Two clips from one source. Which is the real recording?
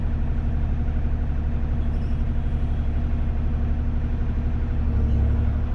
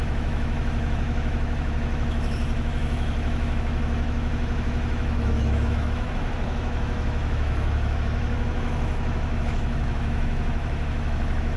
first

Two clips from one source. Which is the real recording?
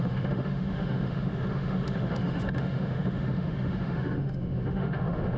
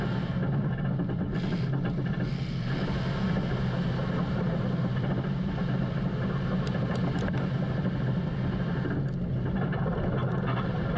second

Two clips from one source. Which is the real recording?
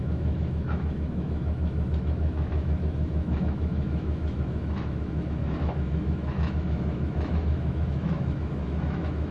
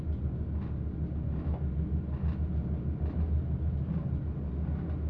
second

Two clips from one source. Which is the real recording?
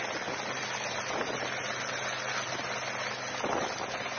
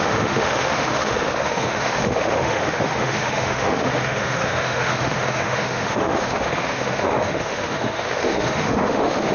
first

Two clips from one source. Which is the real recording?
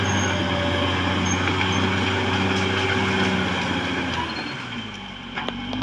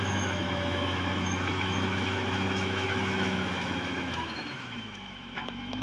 first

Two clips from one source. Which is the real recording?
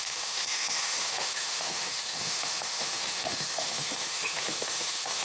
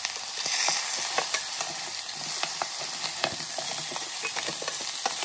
second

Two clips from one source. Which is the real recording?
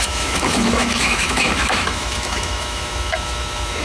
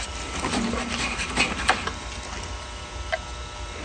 second